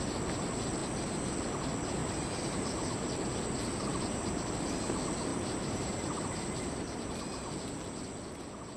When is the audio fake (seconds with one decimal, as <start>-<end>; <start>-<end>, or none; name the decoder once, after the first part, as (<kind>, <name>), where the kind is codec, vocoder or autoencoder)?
2.0-3.1 (vocoder, BigVGAN v2); 3.9-4.6; 5.3-6.8

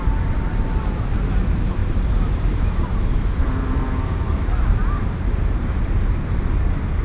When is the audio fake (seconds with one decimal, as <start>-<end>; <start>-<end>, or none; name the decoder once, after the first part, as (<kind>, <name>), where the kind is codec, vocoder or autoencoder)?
1.8-6.0 (vocoder, BigVGAN v2)

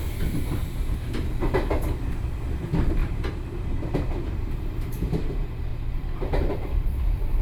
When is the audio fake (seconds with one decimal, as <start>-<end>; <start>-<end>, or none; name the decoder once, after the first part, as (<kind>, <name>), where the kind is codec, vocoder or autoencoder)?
3.0-5.3 (vocoder, BigVGAN v2); 5.7-7.4

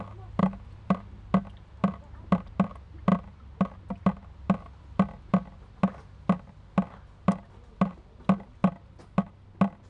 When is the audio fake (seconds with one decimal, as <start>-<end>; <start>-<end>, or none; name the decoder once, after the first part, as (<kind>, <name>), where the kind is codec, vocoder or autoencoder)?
0.4-1.0 (vocoder, BigVGAN v2)

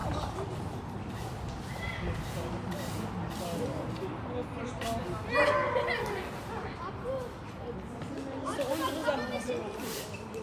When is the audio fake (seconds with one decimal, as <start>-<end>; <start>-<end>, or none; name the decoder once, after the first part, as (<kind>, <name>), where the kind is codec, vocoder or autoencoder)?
0.0-0.5 (vocoder, BigVGAN v2)